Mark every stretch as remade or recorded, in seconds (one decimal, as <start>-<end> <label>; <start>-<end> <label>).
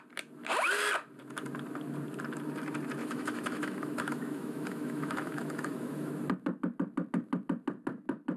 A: 0.0-3.0 recorded; 3.0-6.1 remade; 6.1-8.4 recorded